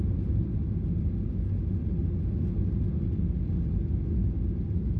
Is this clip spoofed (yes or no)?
no